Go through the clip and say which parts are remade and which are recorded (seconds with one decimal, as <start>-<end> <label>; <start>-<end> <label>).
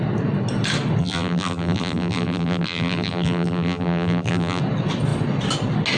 0.0-1.0 recorded; 1.0-4.6 remade; 4.6-6.0 recorded